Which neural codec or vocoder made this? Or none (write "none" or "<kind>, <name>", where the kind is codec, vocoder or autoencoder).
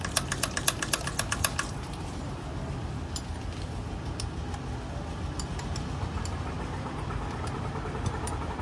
none